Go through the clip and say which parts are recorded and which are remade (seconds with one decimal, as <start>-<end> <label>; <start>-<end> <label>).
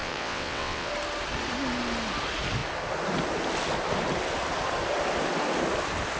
0.0-0.9 remade; 0.9-6.2 recorded